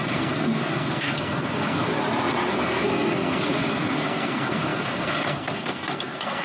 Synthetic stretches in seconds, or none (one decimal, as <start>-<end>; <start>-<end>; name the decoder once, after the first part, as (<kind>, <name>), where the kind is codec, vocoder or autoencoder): 0.0-1.9 (codec, SNAC); 2.5-6.4